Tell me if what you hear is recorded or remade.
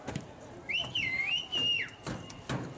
recorded